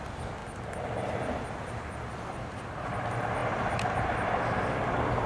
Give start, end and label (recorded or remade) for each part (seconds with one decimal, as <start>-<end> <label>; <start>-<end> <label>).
0.0-5.3 recorded

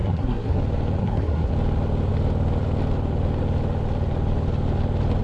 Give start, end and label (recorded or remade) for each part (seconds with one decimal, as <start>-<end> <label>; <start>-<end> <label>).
0.0-0.6 remade; 0.6-1.0 recorded; 1.0-1.5 remade; 1.5-5.2 recorded

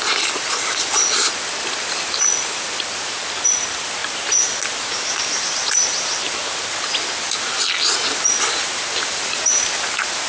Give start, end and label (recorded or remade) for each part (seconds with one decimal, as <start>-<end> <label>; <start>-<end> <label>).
0.0-10.3 recorded

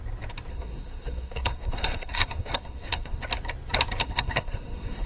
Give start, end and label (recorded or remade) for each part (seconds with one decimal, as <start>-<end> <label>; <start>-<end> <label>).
0.0-0.5 recorded; 0.5-3.2 remade; 3.2-4.0 recorded; 4.0-5.1 remade

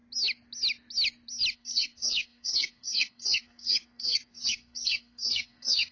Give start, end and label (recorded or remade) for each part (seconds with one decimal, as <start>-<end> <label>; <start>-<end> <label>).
0.0-1.5 recorded; 1.5-5.9 remade

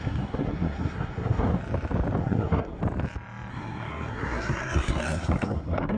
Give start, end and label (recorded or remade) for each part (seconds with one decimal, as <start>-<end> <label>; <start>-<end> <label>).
0.0-1.6 remade; 1.6-2.2 recorded; 2.2-2.8 remade; 2.8-3.5 recorded; 3.5-6.0 remade

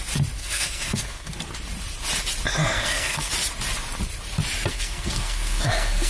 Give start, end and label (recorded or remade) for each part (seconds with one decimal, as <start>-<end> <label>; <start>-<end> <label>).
0.0-0.4 recorded; 0.4-1.3 remade; 1.3-2.5 recorded; 2.5-3.3 remade; 3.3-4.7 recorded; 4.7-6.1 remade

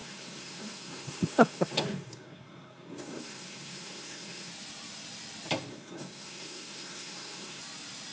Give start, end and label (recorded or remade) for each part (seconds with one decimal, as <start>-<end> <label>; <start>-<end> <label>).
0.0-4.5 remade; 4.5-5.7 recorded; 5.7-7.6 remade; 7.6-8.1 recorded